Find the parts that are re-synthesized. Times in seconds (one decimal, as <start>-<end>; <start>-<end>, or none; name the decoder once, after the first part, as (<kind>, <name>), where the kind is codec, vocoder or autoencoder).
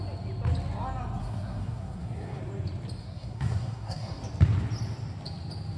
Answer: 1.2-2.4 (codec, SNAC); 3.0-4.2